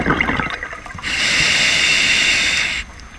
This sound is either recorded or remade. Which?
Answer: recorded